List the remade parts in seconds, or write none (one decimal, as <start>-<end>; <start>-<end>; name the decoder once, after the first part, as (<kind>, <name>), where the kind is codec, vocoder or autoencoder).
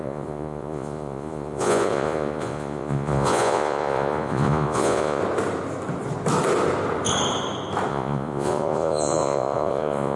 0.0-5.2 (vocoder, Vocos); 7.9-10.2